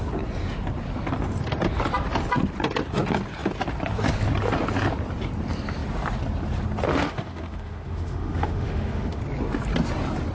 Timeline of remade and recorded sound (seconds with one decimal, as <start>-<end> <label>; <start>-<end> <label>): 0.0-6.9 recorded; 6.9-9.2 remade; 9.2-10.3 recorded

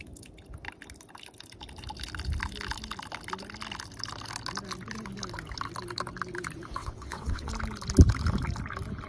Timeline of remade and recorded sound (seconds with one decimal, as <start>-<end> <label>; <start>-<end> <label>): 0.0-6.8 recorded; 6.8-7.5 remade; 7.5-9.1 recorded

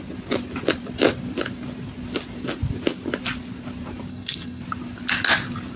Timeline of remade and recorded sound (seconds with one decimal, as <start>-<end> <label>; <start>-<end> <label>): 0.0-4.1 recorded; 4.1-4.6 remade; 4.6-5.8 recorded

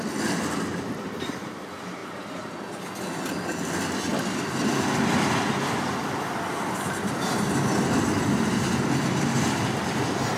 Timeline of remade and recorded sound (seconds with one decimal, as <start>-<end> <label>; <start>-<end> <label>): 0.0-10.4 recorded

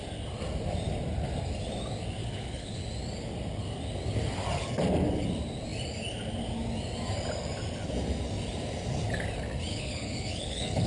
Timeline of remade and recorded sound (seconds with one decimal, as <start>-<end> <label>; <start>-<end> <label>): 0.0-2.2 recorded; 2.2-2.8 remade; 2.8-9.7 recorded; 9.7-10.9 remade

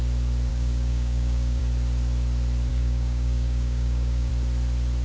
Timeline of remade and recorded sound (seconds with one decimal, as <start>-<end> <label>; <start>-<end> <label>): 0.0-0.5 recorded; 0.5-1.6 remade; 1.6-2.7 recorded; 2.7-4.3 remade; 4.3-5.0 recorded